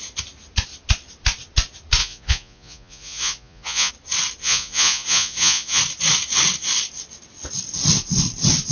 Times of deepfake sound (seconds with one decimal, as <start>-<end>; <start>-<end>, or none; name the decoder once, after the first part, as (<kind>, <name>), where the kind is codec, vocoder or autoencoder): 2.0-3.9 (vocoder, Vocos); 4.4-5.8